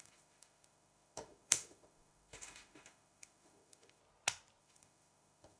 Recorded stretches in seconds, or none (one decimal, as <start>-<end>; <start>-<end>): 4.0-4.6

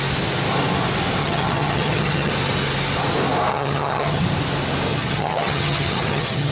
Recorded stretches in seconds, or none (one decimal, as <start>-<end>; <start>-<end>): 0.0-1.2; 2.3-3.5; 4.2-4.9

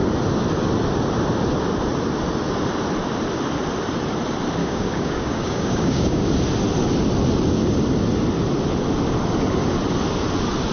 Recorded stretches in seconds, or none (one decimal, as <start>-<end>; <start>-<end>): 0.0-4.6; 6.3-10.7